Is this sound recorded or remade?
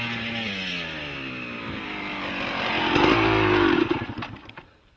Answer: recorded